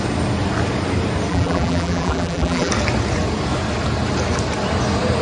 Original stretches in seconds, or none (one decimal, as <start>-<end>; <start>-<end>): 0.0-1.3; 2.7-5.2